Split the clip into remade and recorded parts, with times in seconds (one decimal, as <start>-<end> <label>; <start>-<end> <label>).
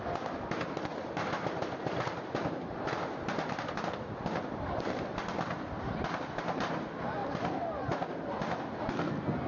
0.0-0.9 recorded; 0.9-5.9 remade; 5.9-9.5 recorded